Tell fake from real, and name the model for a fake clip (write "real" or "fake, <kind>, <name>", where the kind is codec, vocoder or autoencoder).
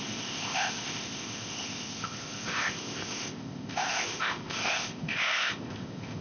fake, codec, ZipCodec